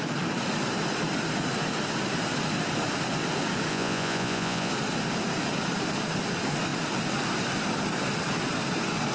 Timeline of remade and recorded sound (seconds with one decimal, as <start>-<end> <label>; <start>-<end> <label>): 0.0-3.7 recorded; 3.7-4.7 remade; 4.7-9.1 recorded